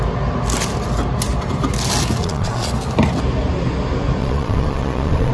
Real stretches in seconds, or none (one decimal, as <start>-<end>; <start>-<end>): 0.0-2.2; 2.7-4.2